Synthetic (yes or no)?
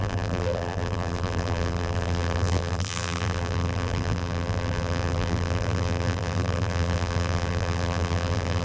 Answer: yes